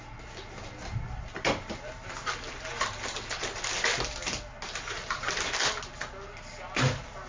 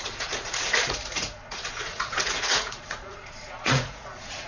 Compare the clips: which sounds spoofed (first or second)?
second